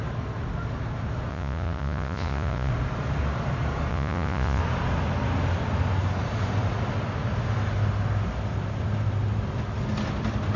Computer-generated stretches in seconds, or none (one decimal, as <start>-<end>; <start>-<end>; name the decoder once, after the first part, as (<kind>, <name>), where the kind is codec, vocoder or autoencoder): 1.3-2.7 (vocoder, Vocos); 3.9-4.6